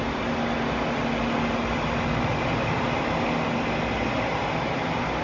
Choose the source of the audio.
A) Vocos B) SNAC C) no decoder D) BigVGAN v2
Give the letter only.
C